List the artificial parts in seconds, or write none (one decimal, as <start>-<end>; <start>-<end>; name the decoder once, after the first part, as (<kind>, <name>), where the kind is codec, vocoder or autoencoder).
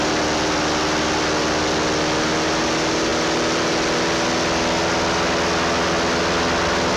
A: none